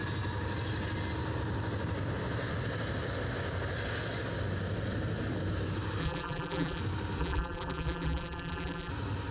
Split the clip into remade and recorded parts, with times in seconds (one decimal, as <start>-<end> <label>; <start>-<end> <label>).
0.0-6.0 recorded; 6.0-6.8 remade; 6.8-7.2 recorded; 7.2-8.9 remade; 8.9-9.3 recorded